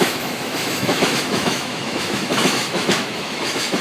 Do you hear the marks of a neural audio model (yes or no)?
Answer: yes